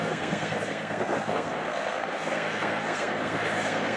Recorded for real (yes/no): no